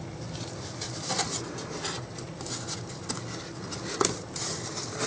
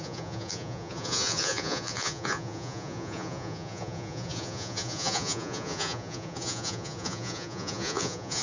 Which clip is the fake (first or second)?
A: second